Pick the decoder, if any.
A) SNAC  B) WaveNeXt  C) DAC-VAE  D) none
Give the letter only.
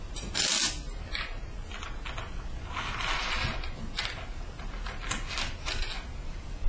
D